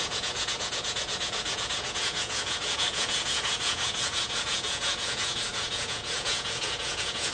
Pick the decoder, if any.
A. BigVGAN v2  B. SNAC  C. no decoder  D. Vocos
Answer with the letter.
D